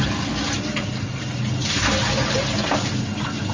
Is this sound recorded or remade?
recorded